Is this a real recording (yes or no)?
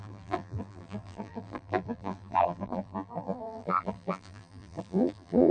no